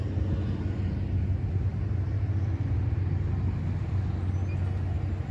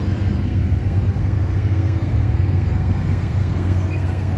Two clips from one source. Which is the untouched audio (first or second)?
first